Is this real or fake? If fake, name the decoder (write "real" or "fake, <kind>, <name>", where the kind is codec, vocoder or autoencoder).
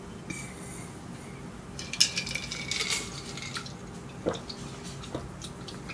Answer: real